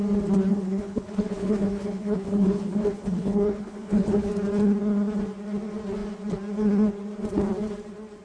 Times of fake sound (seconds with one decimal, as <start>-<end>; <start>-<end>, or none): 0.5-4.3